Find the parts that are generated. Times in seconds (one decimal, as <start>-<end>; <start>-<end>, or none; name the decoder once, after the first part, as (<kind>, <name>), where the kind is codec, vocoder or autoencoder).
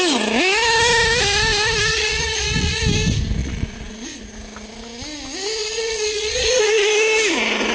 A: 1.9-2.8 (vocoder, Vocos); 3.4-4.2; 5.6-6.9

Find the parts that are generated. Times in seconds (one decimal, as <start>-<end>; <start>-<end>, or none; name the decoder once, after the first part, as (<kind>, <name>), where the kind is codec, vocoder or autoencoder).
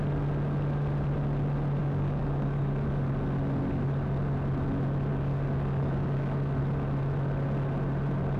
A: 1.8-3.1 (codec, DAC); 5.1-6.6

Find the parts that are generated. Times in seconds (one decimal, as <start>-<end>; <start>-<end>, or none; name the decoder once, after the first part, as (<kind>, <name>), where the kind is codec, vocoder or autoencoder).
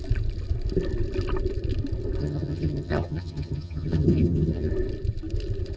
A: 2.2-4.7 (vocoder, HiFi-GAN)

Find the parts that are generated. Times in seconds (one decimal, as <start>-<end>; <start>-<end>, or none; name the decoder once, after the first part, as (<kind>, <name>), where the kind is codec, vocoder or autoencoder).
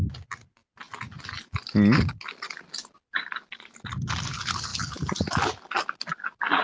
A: none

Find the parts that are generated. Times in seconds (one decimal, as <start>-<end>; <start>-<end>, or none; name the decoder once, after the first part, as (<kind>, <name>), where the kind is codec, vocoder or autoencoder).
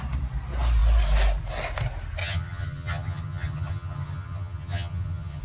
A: 2.2-5.4 (vocoder, HiFi-GAN)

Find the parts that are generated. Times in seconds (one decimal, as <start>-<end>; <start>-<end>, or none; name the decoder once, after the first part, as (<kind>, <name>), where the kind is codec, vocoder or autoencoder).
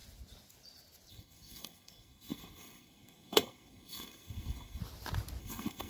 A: 1.1-4.8 (codec, SNAC); 5.4-5.9